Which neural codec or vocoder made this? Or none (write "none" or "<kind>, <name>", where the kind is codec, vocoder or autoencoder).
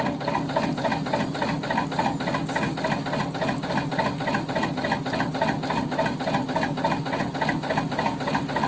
none